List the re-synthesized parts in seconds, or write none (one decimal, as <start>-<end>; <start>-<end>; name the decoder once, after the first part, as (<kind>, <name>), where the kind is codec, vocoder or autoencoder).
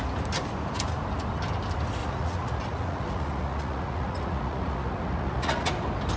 2.0-5.7 (vocoder, Vocos)